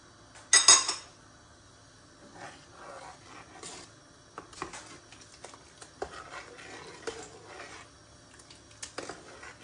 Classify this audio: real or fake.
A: real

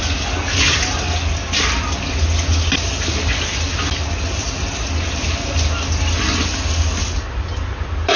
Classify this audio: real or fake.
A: real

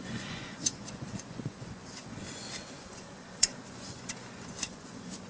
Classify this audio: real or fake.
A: fake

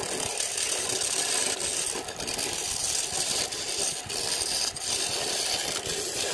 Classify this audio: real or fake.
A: real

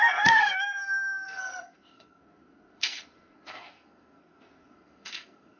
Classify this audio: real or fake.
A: fake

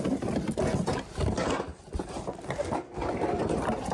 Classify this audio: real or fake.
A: real